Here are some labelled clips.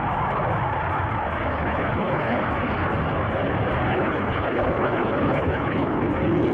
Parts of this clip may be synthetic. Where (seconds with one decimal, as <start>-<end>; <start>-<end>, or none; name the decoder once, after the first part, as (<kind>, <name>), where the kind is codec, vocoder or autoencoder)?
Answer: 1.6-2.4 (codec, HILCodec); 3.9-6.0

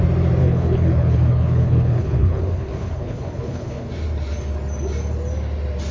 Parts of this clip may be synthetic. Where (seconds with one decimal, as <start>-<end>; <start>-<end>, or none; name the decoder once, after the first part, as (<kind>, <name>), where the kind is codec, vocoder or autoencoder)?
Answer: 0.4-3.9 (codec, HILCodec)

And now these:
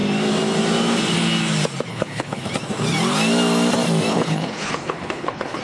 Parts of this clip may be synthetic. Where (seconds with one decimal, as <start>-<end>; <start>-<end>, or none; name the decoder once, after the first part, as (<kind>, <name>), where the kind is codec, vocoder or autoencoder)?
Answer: 1.9-2.5 (codec, HILCodec); 4.1-5.6